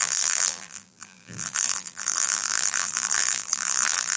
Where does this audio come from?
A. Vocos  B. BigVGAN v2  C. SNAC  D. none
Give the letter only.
B